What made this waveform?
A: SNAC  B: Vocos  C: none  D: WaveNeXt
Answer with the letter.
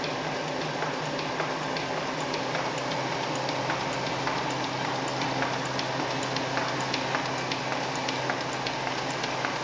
C